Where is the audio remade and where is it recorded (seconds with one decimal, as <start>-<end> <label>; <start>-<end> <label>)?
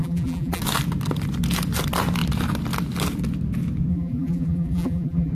0.0-0.6 remade; 0.6-3.9 recorded; 3.9-5.3 remade